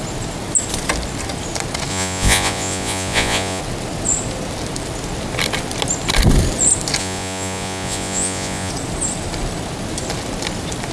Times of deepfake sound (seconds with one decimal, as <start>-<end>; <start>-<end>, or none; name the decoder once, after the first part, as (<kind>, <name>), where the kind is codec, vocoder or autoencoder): 1.9-3.6 (vocoder, Vocos); 7.0-8.7